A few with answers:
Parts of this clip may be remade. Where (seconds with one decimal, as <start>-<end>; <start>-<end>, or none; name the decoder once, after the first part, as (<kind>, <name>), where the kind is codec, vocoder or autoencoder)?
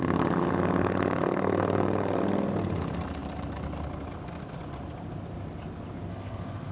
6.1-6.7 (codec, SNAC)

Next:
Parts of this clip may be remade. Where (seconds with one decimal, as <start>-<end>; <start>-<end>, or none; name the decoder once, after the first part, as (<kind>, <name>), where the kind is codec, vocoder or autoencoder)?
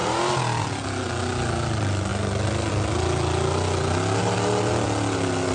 none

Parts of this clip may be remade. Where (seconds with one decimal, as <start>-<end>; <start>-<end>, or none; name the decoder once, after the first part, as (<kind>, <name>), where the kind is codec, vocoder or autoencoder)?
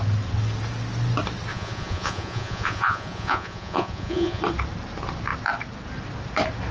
1.5-4.4 (vocoder, Vocos)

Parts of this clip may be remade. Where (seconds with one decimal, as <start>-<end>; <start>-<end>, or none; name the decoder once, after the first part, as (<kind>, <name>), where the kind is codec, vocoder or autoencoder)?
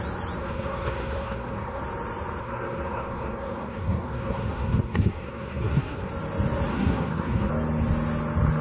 0.4-1.8 (codec, SNAC); 2.4-6.1; 6.7-7.5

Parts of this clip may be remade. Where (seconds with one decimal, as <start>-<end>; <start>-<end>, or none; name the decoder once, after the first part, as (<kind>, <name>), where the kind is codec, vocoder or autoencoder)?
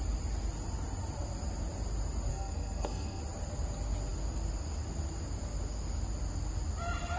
2.3-3.2 (codec, SNAC)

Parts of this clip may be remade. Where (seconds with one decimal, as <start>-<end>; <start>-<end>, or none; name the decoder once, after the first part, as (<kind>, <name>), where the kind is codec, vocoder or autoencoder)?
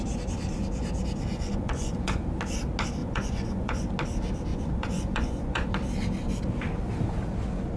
1.3-2.3 (vocoder, Vocos); 3.0-3.8; 4.5-5.7